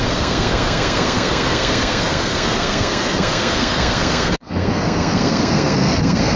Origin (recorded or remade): remade